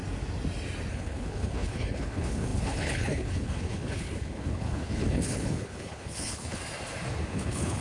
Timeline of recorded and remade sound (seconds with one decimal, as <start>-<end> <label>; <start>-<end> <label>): 0.0-0.9 recorded; 0.9-6.6 remade; 6.6-7.2 recorded; 7.2-7.8 remade